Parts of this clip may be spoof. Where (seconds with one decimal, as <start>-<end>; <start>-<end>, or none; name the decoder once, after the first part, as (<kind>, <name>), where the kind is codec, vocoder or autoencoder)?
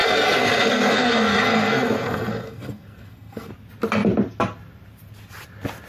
0.0-3.5 (codec, SNAC)